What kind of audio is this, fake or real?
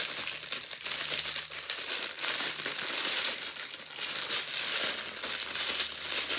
real